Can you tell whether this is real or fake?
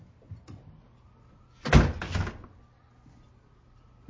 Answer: real